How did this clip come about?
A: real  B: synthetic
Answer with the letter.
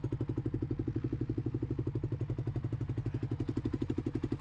A